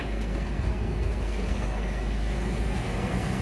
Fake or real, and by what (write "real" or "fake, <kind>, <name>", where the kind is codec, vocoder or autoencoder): fake, codec, SNAC